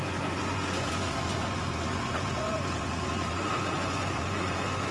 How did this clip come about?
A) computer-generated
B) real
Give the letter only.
A